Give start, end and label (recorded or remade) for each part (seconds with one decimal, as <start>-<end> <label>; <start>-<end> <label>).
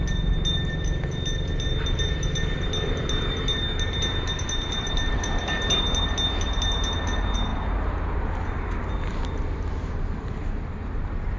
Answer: 0.0-11.4 recorded